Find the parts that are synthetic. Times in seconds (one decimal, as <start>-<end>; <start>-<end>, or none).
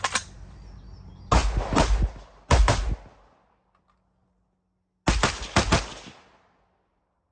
none